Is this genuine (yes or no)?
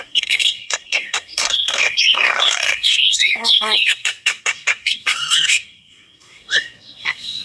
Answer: no